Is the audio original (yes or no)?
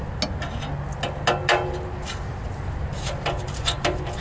yes